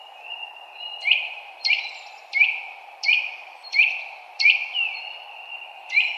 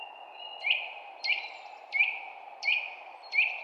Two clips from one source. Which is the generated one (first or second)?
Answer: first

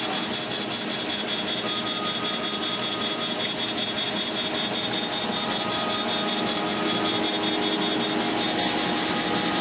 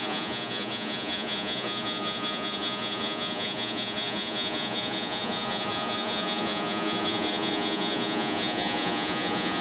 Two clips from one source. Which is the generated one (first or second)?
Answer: second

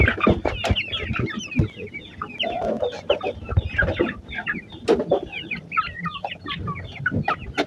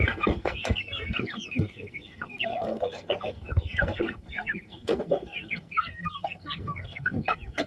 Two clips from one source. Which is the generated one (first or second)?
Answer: second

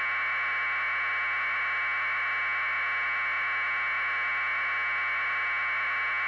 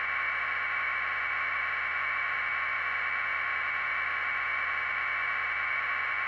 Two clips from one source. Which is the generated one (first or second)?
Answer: second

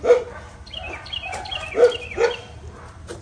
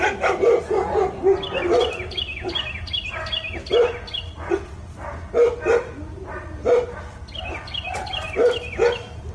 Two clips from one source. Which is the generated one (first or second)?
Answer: first